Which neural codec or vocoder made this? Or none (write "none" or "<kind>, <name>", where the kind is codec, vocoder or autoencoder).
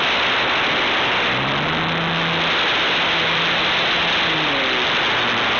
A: none